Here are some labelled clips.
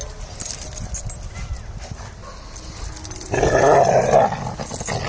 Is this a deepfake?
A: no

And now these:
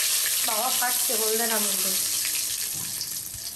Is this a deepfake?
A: no